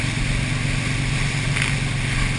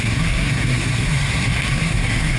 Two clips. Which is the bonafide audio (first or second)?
first